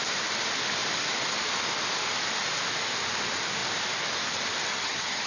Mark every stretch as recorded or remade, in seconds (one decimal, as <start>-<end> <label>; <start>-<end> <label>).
0.0-4.7 recorded; 4.7-5.3 remade